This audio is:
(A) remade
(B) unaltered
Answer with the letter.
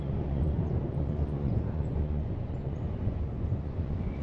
A